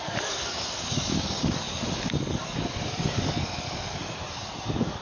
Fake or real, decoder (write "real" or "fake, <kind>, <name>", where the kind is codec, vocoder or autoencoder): fake, codec, DAC